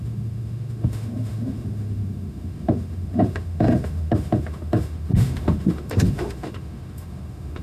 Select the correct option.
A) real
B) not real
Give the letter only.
B